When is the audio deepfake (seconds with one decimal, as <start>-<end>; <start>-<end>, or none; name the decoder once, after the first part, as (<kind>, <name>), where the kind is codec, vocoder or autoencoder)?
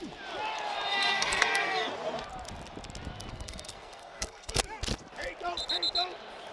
0.9-1.9 (codec, SNAC); 3.3-4.6